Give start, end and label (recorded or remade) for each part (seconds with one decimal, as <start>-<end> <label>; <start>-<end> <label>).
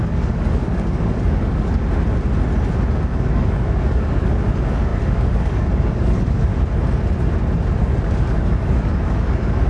0.0-1.8 remade; 1.8-3.0 recorded; 3.0-6.5 remade; 6.5-7.8 recorded; 7.8-9.7 remade